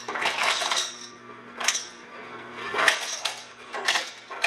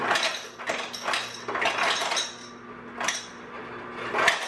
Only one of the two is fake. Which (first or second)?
first